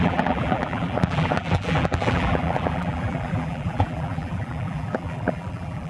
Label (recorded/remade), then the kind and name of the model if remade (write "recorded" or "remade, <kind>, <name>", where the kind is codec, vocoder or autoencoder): remade, vocoder, BigVGAN v2